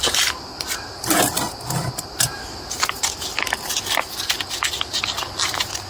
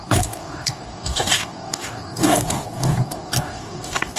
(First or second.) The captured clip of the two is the first